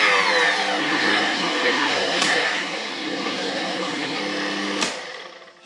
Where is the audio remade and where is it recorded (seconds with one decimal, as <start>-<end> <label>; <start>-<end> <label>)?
0.0-0.8 recorded; 0.8-4.2 remade; 4.2-5.7 recorded